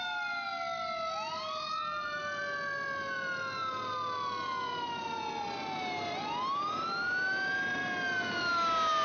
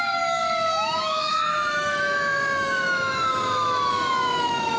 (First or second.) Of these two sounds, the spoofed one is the second